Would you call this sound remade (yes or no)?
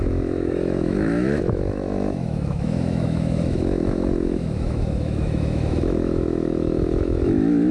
yes